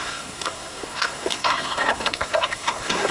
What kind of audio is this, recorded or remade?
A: remade